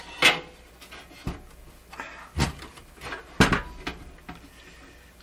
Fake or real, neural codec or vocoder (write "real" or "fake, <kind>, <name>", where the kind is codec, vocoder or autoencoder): real